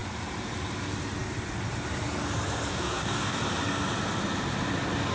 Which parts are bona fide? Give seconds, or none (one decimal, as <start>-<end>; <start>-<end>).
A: 0.0-2.7; 3.4-5.1